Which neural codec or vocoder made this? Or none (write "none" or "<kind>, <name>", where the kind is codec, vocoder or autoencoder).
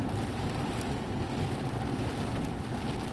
none